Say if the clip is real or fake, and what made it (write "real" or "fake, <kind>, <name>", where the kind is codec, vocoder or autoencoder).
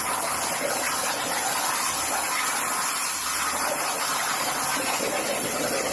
real